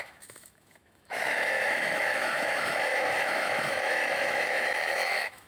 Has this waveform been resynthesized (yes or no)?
yes